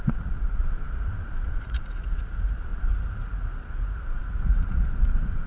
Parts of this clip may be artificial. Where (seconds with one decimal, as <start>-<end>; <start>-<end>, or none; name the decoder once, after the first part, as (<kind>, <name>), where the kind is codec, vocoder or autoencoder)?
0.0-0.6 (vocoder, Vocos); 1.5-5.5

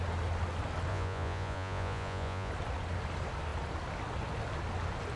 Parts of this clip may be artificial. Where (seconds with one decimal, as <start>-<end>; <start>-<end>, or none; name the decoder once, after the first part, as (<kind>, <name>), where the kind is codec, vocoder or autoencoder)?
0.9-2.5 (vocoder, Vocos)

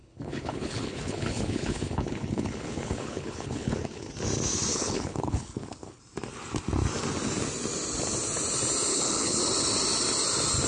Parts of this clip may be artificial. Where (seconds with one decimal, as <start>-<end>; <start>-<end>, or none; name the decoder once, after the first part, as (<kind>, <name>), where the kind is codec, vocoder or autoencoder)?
0.0-4.1 (codec, HILCodec); 4.7-6.0; 8.9-9.4

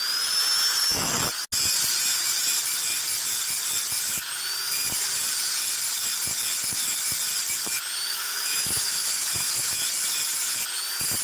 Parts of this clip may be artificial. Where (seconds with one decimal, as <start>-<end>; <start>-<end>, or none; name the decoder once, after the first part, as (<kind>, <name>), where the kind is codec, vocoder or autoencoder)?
8.1-9.9 (autoencoder, DAC-VAE)

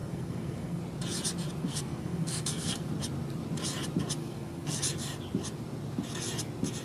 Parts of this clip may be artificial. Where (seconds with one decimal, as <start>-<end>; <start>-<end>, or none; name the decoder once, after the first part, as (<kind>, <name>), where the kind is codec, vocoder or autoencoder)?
0.0-0.8 (codec, SNAC); 1.6-2.9; 4.2-4.8